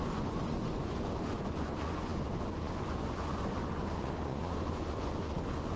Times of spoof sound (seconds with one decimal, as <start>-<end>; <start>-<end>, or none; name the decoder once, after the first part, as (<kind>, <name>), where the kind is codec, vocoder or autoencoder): 0.0-5.8 (vocoder, Vocos)